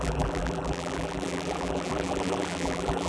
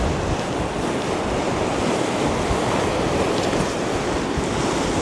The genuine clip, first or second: second